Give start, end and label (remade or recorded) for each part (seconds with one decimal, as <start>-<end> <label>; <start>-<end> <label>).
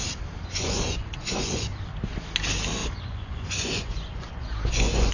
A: 0.0-0.5 recorded; 0.5-1.7 remade; 1.7-2.8 recorded; 2.8-5.1 remade